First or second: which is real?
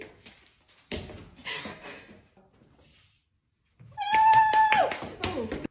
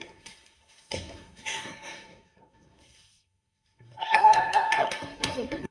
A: first